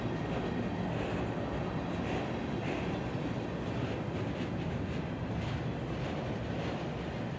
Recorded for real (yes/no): yes